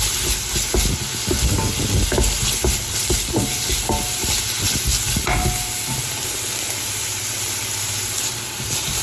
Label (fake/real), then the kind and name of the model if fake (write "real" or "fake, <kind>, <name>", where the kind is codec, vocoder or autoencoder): real